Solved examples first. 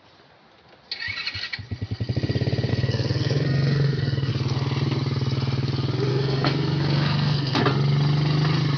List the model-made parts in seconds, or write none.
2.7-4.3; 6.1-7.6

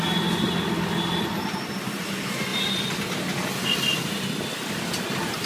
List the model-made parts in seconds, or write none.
none

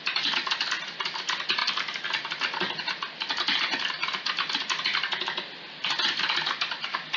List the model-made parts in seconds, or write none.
none